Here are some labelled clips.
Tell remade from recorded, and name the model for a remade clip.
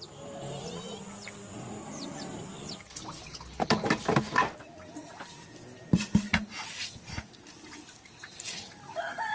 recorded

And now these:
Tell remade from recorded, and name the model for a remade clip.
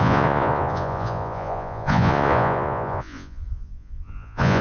remade, vocoder, Vocos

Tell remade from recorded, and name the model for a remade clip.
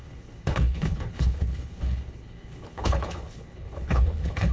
remade, codec, HILCodec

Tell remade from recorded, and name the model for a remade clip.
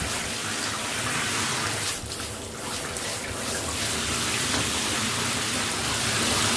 recorded